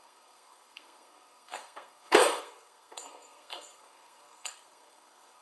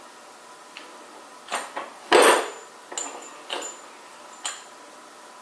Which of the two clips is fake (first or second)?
first